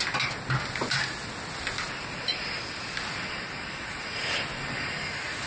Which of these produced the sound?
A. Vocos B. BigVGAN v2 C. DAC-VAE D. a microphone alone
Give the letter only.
D